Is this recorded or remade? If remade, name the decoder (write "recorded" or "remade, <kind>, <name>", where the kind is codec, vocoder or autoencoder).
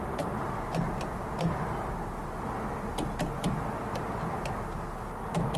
recorded